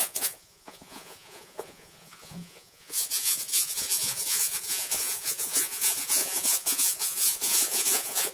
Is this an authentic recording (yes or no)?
no